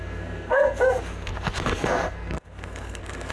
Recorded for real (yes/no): no